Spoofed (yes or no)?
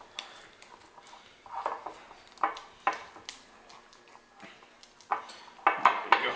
no